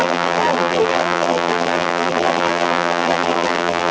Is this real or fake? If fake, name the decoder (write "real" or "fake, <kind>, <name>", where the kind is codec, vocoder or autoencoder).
fake, vocoder, BigVGAN v2